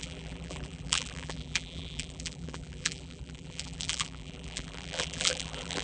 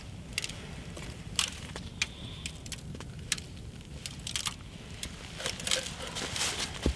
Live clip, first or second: second